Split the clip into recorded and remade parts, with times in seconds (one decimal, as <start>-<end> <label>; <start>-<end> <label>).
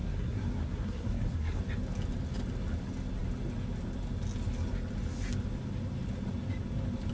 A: 0.0-1.6 remade; 1.6-7.1 recorded